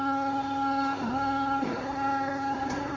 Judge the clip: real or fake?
fake